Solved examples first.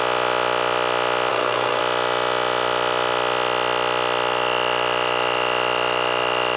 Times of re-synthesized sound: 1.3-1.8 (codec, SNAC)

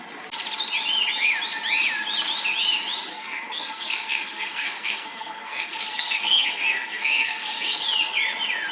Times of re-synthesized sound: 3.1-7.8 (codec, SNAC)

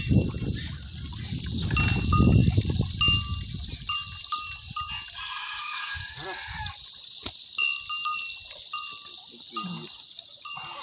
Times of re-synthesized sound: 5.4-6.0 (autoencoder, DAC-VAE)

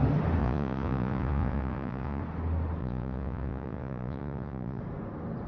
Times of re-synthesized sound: 0.4-2.2 (vocoder, Vocos); 2.8-4.8

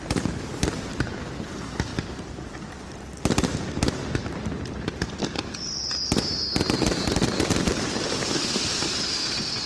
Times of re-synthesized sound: 0.0-1.9 (vocoder, BigVGAN v2); 6.8-9.7

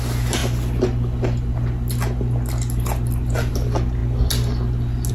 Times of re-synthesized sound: none